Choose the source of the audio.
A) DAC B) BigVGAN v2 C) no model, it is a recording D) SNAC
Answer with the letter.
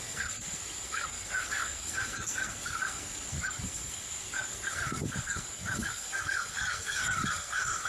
D